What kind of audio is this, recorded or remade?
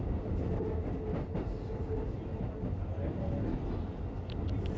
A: recorded